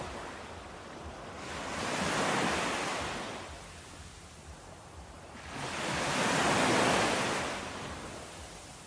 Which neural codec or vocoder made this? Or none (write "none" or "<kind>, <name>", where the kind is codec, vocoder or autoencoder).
none